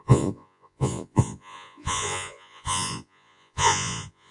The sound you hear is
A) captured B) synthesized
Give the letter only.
B